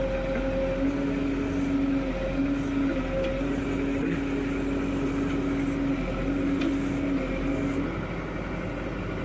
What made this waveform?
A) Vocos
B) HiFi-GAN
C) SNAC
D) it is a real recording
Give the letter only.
D